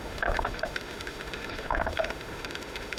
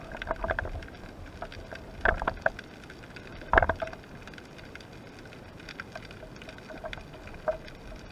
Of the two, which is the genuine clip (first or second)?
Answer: second